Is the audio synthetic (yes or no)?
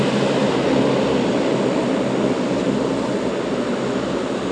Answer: no